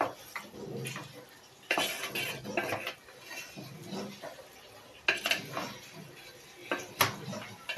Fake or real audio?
real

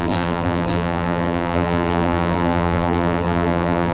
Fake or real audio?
fake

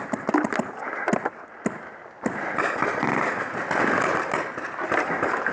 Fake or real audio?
fake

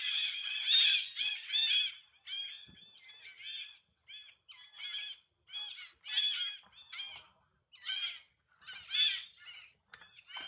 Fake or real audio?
real